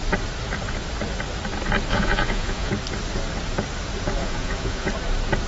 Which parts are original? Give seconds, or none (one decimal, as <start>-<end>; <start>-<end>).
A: 0.0-1.9; 2.7-4.2; 4.9-5.5